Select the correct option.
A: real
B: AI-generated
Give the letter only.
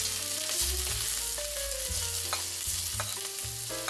A